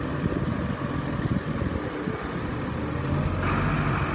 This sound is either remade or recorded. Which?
recorded